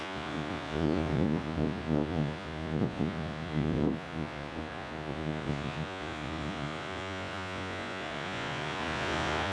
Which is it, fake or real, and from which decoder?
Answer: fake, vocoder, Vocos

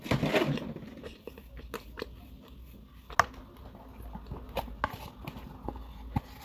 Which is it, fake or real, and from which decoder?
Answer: real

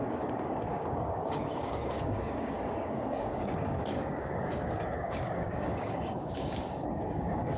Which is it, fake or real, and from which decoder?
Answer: fake, codec, DAC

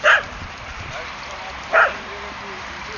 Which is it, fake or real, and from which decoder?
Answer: fake, vocoder, BigVGAN v2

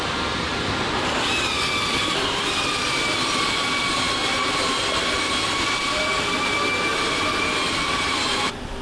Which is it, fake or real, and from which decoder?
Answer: real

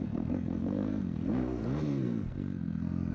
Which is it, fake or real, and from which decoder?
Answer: fake, codec, SNAC